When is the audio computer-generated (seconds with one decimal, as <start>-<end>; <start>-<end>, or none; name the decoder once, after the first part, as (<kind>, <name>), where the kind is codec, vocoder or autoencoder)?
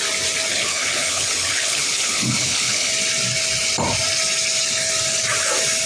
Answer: 0.5-2.9 (codec, HILCodec)